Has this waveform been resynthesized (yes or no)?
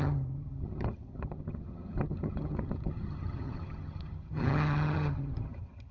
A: yes